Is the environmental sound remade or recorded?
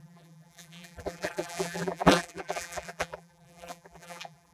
remade